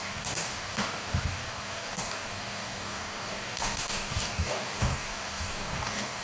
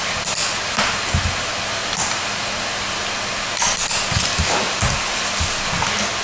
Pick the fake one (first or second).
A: first